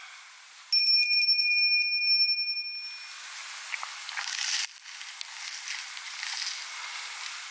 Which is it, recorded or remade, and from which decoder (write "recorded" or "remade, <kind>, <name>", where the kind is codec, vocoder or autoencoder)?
recorded